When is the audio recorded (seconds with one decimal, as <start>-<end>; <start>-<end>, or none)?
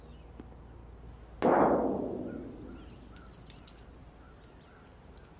0.0-5.4